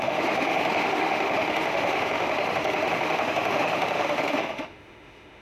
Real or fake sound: fake